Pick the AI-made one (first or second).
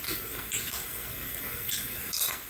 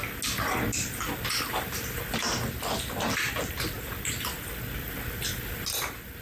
first